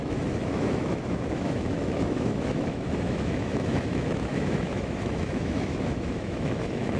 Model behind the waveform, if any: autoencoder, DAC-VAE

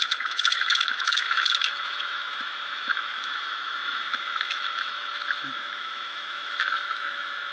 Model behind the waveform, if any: autoencoder, DAC-VAE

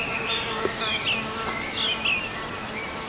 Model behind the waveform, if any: none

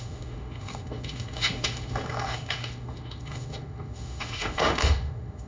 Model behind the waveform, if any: autoencoder, DAC-VAE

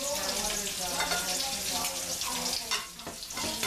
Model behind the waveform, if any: none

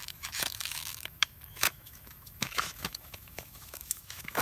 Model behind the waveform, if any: autoencoder, DAC-VAE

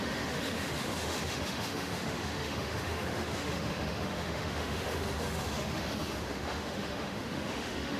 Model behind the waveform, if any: autoencoder, DAC-VAE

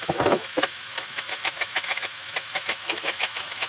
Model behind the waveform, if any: autoencoder, DAC-VAE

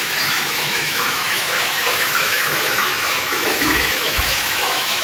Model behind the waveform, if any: autoencoder, DAC-VAE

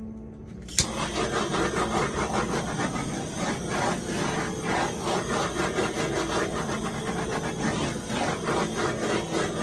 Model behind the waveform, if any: none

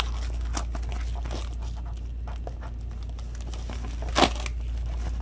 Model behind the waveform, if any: none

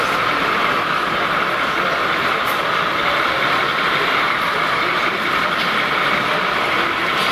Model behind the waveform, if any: none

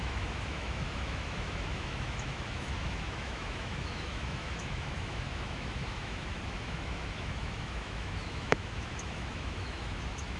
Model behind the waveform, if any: autoencoder, DAC-VAE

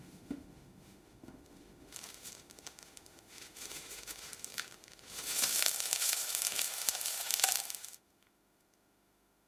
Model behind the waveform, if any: autoencoder, DAC-VAE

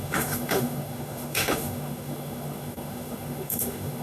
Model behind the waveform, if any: autoencoder, DAC-VAE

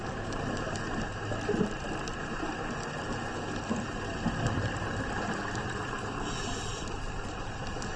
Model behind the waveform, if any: none